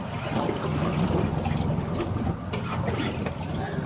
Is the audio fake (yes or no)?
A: no